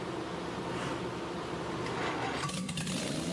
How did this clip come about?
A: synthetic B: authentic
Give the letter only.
B